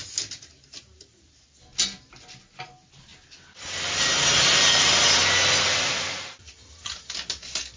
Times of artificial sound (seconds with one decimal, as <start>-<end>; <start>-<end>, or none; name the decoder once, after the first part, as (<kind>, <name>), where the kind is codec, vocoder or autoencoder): none